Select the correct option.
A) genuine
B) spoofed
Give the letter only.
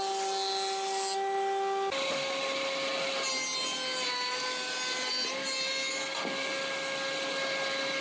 A